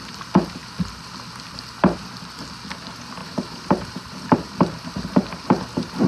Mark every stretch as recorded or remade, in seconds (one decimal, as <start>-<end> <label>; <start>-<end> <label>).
0.0-3.2 recorded; 3.2-4.9 remade; 4.9-6.1 recorded